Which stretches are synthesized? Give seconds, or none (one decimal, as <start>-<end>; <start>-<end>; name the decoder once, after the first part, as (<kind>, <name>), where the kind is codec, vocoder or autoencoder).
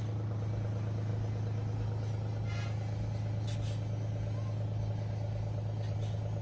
none